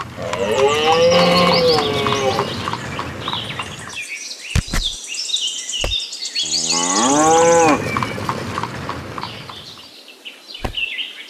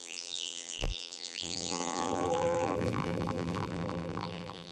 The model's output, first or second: second